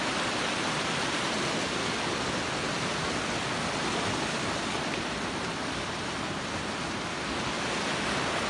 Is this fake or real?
real